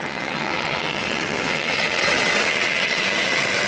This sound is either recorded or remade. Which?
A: remade